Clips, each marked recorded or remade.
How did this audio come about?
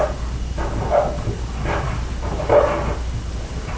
recorded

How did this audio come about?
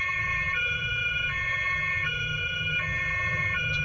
remade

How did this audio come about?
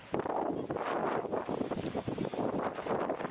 recorded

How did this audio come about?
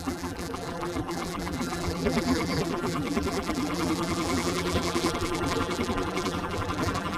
remade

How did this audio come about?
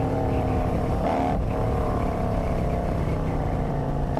remade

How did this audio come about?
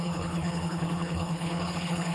remade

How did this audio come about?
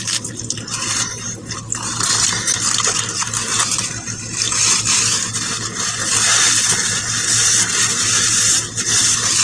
recorded